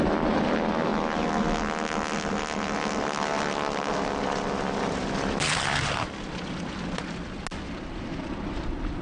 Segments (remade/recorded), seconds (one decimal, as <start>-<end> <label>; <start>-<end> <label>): 0.0-9.0 recorded